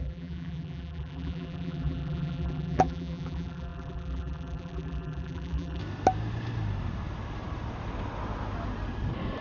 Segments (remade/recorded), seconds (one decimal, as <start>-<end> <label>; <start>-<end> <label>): 0.0-5.8 remade; 5.8-9.4 recorded